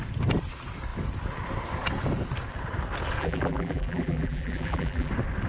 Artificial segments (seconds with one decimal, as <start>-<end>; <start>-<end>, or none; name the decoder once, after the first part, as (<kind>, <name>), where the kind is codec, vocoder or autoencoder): 3.2-5.1 (vocoder, BigVGAN v2)